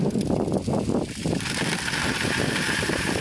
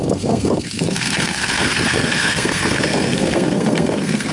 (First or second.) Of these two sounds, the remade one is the second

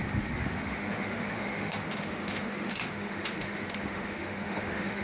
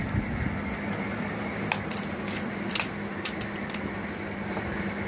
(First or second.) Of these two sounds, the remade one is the first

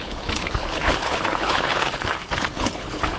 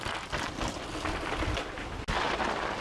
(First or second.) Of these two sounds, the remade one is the first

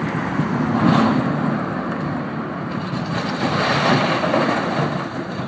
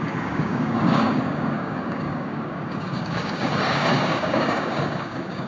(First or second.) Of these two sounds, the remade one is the second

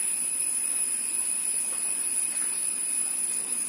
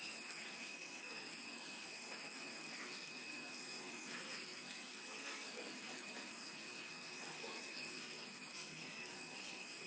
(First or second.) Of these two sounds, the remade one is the second